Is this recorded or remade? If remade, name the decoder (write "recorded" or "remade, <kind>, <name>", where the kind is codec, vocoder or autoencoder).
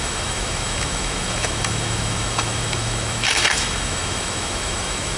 remade, autoencoder, DAC-VAE